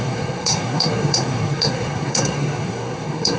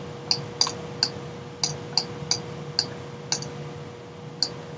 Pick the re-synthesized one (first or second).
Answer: first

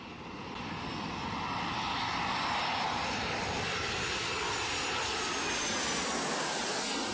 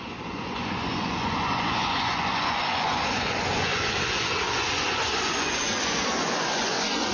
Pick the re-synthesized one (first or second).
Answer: second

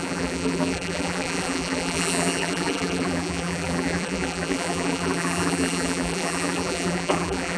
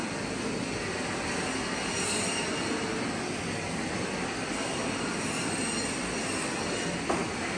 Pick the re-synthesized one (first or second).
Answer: first